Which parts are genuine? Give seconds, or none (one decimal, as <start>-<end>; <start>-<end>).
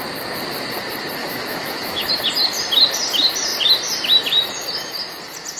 0.0-1.2; 2.1-5.6